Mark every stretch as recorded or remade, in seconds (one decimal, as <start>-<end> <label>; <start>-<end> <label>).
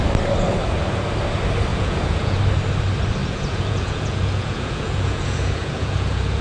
0.0-1.7 recorded; 1.7-2.4 remade; 2.4-3.2 recorded; 3.2-6.4 remade